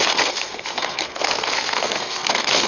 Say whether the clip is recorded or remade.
remade